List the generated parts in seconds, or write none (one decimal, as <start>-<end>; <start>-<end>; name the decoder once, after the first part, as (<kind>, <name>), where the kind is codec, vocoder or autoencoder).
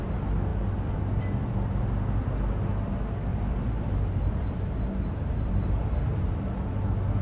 3.3-6.3 (vocoder, BigVGAN v2)